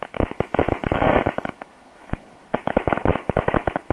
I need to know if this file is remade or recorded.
remade